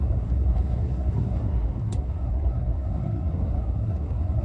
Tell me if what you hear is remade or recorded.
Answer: remade